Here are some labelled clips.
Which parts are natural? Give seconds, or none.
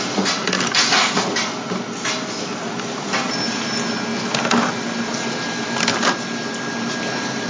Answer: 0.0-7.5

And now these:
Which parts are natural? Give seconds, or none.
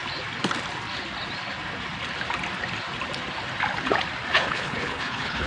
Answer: 0.0-4.3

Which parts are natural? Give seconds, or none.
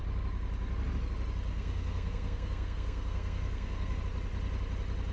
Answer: 0.0-1.5; 4.0-5.1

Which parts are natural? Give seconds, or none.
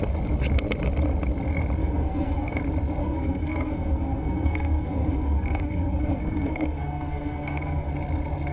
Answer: 0.0-1.8; 2.6-3.0; 7.9-8.5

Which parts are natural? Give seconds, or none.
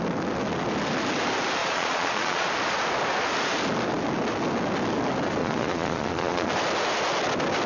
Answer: 0.0-1.6; 2.5-5.4; 6.5-7.7